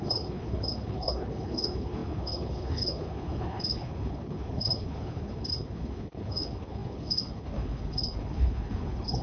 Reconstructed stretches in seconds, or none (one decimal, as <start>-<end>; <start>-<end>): 0.0-9.2